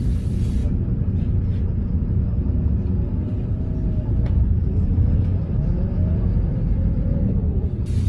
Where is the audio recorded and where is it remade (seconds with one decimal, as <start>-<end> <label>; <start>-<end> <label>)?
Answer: 0.0-0.6 remade; 0.6-4.4 recorded; 4.4-8.1 remade